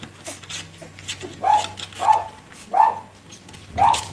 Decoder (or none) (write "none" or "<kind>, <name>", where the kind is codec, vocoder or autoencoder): none